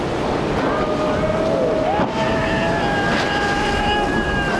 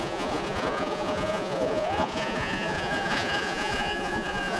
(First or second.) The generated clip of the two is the second